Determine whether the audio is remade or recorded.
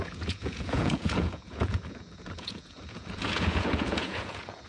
remade